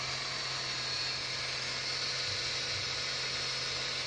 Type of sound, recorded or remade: recorded